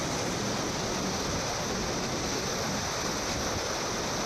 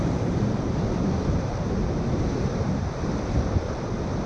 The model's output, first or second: second